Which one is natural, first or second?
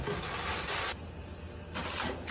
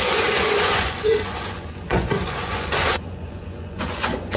first